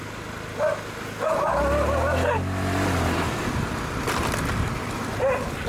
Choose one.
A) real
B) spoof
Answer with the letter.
A